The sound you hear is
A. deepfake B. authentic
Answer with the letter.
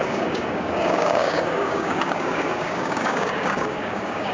A